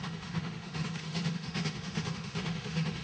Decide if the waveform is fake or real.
fake